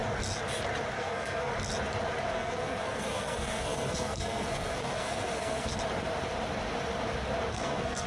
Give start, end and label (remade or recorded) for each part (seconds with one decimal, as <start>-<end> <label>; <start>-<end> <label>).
0.0-1.0 recorded; 1.0-1.5 remade; 1.5-2.3 recorded; 2.3-5.7 remade; 5.7-7.5 recorded; 7.5-8.1 remade